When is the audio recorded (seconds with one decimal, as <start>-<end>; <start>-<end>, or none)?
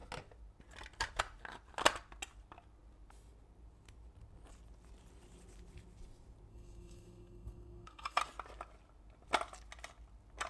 0.0-6.5; 8.2-10.5